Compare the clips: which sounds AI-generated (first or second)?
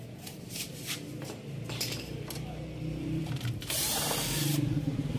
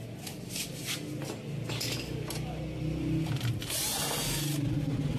first